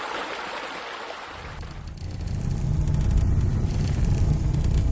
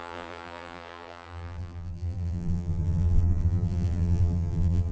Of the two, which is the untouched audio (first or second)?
first